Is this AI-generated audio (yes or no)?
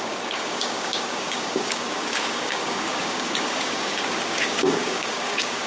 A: yes